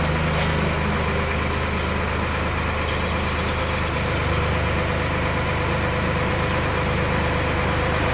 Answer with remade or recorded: recorded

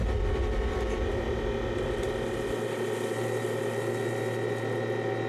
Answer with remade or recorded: recorded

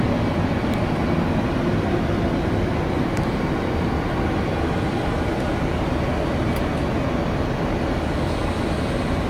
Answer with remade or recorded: recorded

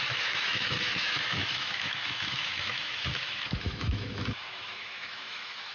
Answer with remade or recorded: remade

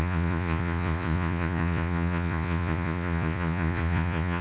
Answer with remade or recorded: remade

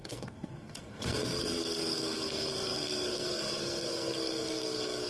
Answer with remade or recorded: remade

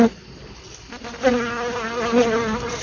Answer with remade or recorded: recorded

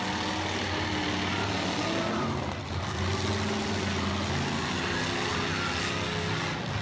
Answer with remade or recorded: recorded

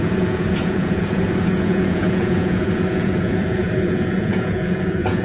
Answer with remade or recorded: remade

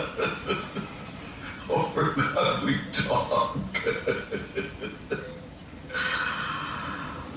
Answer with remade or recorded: recorded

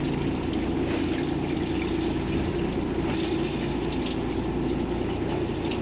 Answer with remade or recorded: recorded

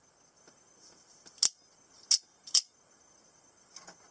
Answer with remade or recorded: recorded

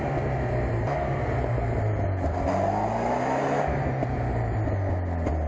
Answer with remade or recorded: recorded